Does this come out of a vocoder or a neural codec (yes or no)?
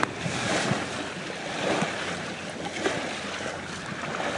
no